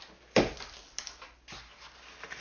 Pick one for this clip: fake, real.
real